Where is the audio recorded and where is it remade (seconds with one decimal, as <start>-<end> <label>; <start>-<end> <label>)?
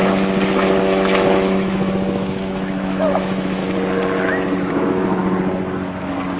0.0-0.8 recorded; 0.8-3.6 remade; 3.6-4.6 recorded; 4.6-5.2 remade; 5.2-6.4 recorded